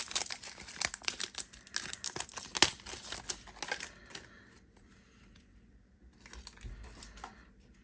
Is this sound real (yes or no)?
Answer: yes